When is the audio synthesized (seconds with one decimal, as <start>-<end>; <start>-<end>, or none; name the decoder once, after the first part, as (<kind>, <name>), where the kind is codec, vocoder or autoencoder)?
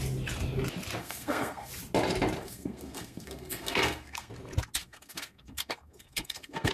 1.0-1.7 (codec, SNAC); 2.4-4.3; 4.8-6.7